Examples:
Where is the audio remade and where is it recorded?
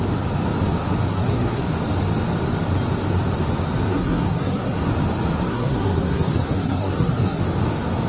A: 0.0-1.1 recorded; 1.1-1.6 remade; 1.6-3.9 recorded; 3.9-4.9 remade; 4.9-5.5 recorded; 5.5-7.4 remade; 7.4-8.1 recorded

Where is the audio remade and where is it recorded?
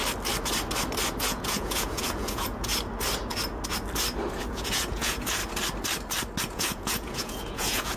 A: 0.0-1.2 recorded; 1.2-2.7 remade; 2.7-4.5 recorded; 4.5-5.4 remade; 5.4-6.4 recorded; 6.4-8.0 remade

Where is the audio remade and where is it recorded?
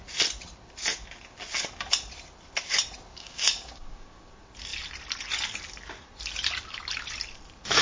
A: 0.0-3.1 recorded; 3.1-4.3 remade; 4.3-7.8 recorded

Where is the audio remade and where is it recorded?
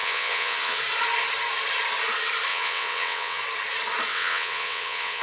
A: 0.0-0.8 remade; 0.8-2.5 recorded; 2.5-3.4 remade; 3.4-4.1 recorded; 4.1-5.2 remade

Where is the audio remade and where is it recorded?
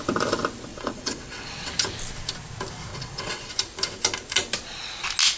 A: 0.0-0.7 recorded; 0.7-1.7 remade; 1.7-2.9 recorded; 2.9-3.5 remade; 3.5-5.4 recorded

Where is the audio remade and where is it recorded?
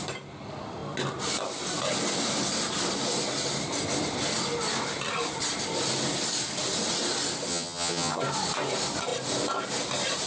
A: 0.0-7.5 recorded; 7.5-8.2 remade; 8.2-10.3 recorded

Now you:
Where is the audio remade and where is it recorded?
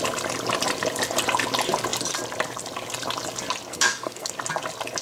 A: 0.0-3.7 recorded; 3.7-4.3 remade; 4.3-5.0 recorded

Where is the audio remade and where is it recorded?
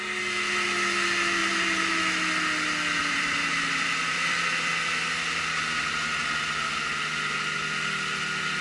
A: 0.0-1.4 recorded; 1.4-2.0 remade; 2.0-3.0 recorded; 3.0-4.7 remade; 4.7-8.6 recorded